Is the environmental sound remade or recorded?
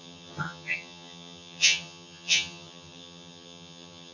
remade